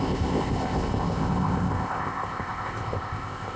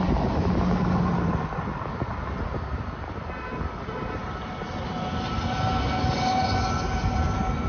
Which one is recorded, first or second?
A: second